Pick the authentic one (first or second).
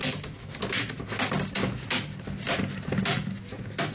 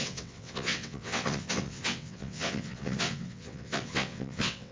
first